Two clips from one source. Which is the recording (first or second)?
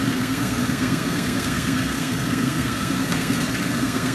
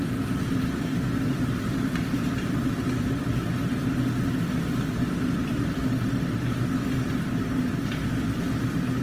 second